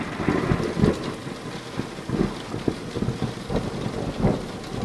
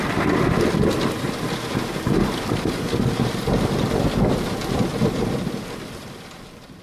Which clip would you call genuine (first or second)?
first